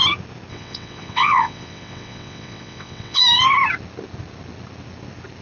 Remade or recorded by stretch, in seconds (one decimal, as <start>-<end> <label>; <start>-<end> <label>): 0.0-0.5 recorded; 0.5-3.2 remade; 3.2-5.4 recorded